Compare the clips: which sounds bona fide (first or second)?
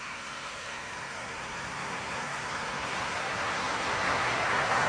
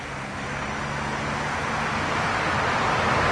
second